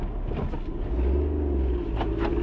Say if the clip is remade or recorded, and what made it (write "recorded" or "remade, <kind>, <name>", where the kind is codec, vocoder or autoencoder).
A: recorded